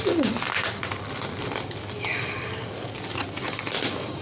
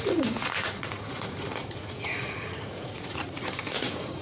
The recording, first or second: first